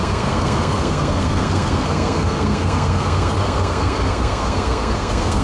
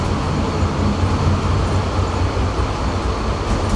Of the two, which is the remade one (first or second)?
first